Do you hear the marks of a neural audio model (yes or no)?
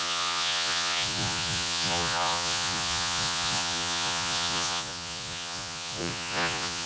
yes